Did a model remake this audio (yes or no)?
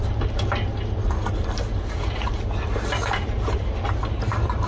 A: no